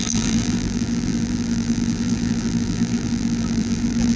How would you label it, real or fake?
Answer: fake